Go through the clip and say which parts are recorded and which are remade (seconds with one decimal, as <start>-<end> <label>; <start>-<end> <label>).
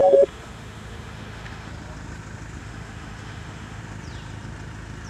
0.0-1.7 remade; 1.7-2.6 recorded; 2.6-3.8 remade; 3.8-5.1 recorded